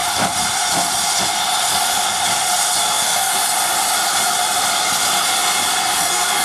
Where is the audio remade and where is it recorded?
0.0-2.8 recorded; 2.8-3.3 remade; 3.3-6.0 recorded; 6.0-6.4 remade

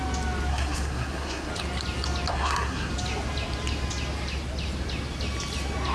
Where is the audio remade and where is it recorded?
0.0-0.5 recorded; 0.5-1.5 remade; 1.5-2.3 recorded; 2.3-2.9 remade; 2.9-5.9 recorded

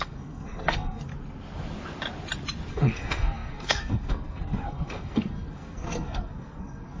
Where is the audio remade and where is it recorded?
0.0-1.1 remade; 1.1-2.7 recorded; 2.7-7.0 remade

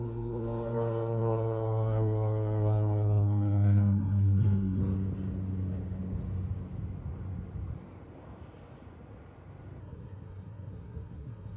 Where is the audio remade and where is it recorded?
0.0-4.8 remade; 4.8-9.8 recorded; 9.8-11.6 remade

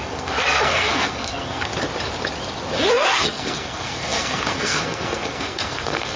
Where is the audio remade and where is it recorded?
0.0-1.7 remade; 1.7-2.9 recorded; 2.9-6.2 remade

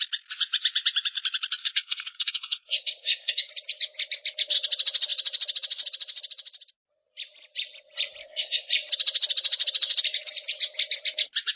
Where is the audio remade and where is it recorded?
0.0-1.6 recorded; 1.6-3.5 remade; 3.5-8.2 recorded; 8.2-8.7 remade; 8.7-11.6 recorded